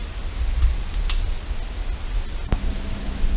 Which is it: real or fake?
real